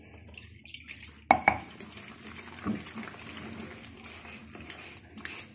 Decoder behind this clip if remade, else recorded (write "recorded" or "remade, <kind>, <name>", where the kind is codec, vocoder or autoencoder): recorded